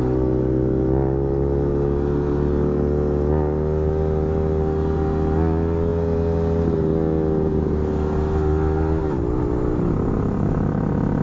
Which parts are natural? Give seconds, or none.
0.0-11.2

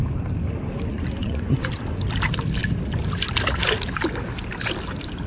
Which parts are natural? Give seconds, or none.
0.0-0.9; 1.7-5.3